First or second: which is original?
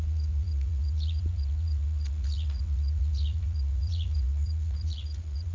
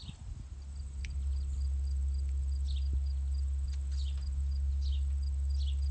second